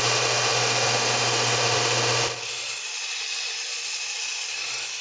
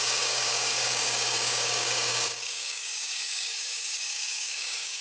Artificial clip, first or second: second